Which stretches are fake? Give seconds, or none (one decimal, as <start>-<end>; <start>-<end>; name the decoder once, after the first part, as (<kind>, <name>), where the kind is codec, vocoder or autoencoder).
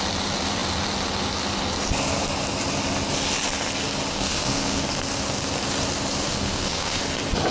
4.1-4.8 (codec, SNAC); 6.3-7.0